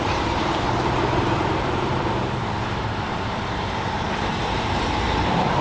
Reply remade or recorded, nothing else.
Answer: remade